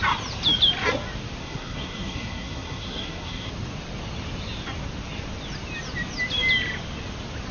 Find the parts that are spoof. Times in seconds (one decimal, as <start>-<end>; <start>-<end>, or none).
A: 1.4-3.5